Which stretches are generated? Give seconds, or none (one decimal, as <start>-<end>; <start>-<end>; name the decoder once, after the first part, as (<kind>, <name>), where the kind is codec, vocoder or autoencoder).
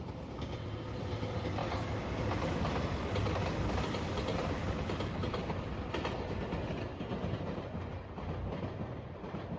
none